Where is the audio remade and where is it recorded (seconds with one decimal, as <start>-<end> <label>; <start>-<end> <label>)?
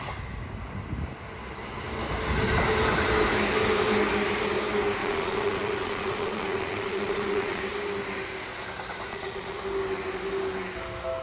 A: 0.0-5.0 recorded; 5.0-7.6 remade; 7.6-9.1 recorded; 9.1-9.6 remade; 9.6-11.2 recorded